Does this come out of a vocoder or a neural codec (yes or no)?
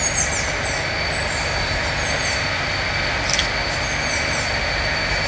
no